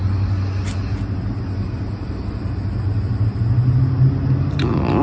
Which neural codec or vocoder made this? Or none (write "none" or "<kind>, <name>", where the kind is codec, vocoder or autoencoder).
none